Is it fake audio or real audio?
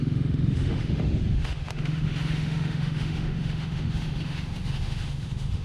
fake